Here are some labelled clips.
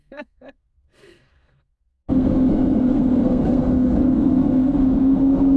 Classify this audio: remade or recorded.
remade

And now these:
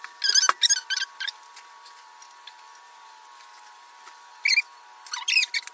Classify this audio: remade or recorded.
recorded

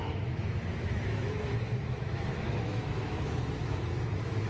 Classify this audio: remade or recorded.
remade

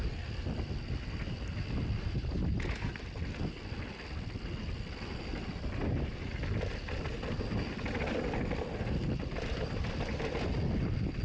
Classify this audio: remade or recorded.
recorded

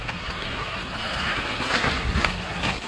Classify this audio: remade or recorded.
remade